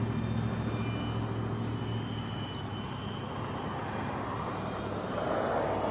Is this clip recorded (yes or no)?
yes